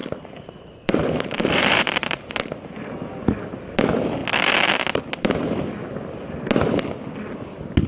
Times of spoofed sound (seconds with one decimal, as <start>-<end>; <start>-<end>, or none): 0.0-2.3